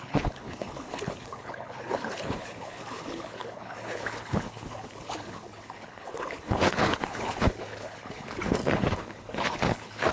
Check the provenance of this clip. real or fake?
fake